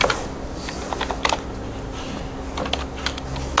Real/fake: real